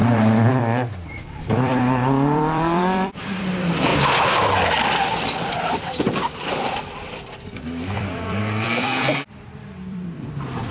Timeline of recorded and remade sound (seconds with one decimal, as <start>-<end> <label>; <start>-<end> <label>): 0.0-3.9 remade; 3.9-5.5 recorded; 5.5-10.7 remade